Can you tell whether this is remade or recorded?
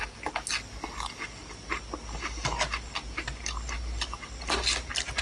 recorded